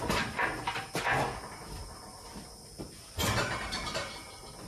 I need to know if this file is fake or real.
fake